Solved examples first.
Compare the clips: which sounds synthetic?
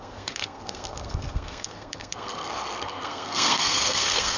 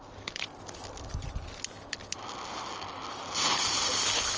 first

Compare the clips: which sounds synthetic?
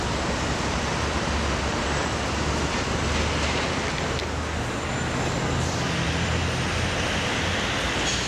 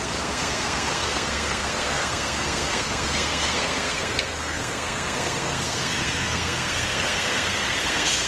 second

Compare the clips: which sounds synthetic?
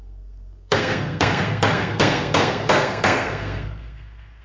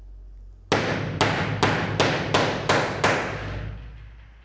first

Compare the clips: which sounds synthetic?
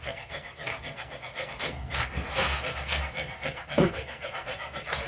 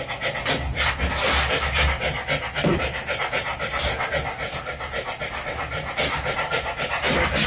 first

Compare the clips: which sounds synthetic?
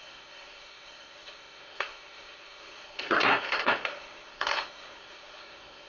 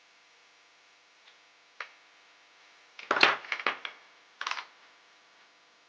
first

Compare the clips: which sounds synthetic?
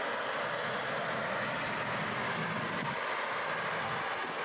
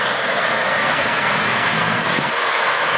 second